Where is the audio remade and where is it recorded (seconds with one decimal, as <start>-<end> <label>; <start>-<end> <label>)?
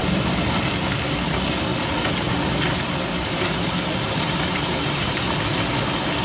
0.0-0.6 remade; 0.6-3.1 recorded; 3.1-5.3 remade; 5.3-6.2 recorded